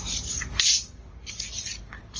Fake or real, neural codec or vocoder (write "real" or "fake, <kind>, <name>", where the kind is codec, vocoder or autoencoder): real